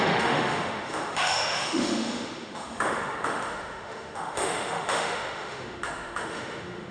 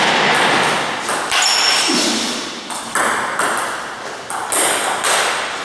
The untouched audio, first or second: second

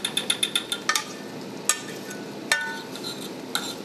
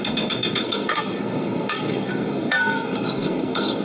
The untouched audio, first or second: first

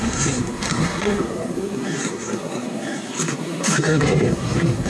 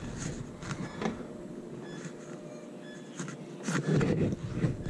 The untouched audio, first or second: second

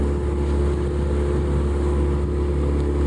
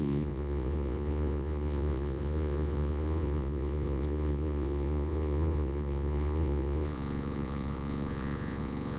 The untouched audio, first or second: first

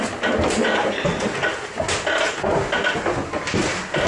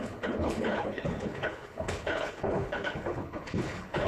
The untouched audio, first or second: first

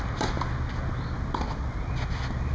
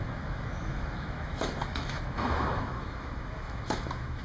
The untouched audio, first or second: first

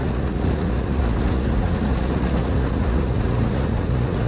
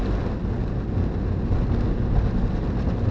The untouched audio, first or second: second